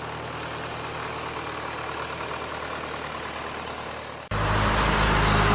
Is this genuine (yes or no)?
yes